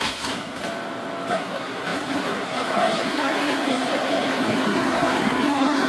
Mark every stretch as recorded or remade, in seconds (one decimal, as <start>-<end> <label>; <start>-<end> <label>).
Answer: 0.0-0.6 remade; 0.6-1.3 recorded; 1.3-5.9 remade

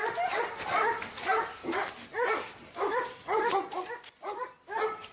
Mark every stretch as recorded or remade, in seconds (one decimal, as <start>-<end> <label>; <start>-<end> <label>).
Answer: 0.0-5.1 recorded

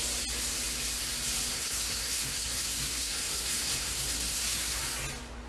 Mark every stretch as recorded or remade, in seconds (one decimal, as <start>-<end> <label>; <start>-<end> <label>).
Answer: 0.0-1.5 recorded; 1.5-4.8 remade; 4.8-5.5 recorded

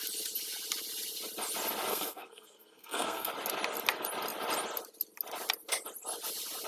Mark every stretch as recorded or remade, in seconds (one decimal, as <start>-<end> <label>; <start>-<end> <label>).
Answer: 0.0-1.9 recorded; 1.9-3.3 remade; 3.3-6.7 recorded

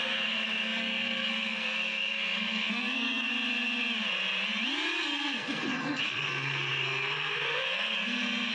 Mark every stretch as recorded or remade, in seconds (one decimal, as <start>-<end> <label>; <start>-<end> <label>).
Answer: 0.0-3.3 remade; 3.3-5.0 recorded; 5.0-8.5 remade

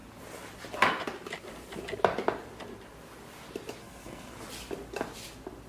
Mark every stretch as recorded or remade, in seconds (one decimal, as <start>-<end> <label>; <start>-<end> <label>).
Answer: 0.0-3.8 recorded; 3.8-4.3 remade; 4.3-5.7 recorded

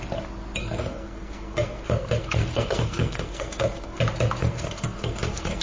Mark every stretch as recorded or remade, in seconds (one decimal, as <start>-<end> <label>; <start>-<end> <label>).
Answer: 0.0-0.6 recorded; 0.6-4.0 remade; 4.0-4.4 recorded; 4.4-5.6 remade